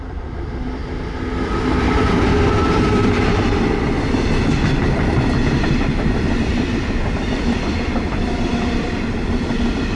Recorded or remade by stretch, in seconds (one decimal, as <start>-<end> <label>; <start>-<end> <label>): 0.0-0.8 remade; 0.8-2.5 recorded; 2.5-10.0 remade

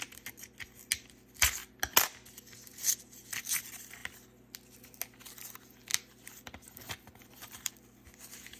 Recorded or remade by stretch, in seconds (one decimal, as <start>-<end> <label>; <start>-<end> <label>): 0.0-5.9 recorded; 5.9-7.7 remade; 7.7-8.6 recorded

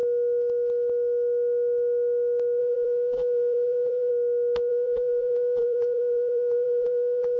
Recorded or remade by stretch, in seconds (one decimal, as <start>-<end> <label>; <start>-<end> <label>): 0.0-2.6 recorded; 2.6-4.1 remade; 4.1-4.7 recorded; 4.7-7.4 remade

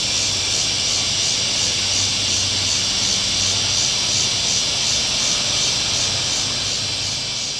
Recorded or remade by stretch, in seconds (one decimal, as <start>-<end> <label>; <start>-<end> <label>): 0.0-7.6 recorded

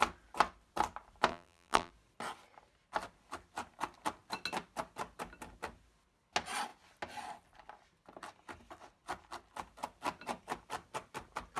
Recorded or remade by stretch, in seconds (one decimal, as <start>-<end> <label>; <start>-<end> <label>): 0.0-1.3 recorded; 1.3-1.9 remade; 1.9-11.6 recorded

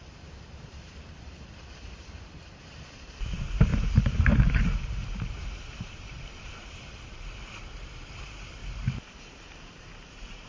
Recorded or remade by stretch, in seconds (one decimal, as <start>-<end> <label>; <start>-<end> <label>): 0.0-8.6 remade; 8.6-9.4 recorded; 9.4-10.5 remade

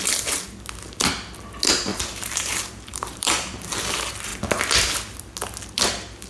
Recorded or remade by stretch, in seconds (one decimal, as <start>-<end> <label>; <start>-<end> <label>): 0.0-1.9 recorded; 1.9-2.5 remade; 2.5-2.9 recorded; 2.9-3.7 remade; 3.7-6.3 recorded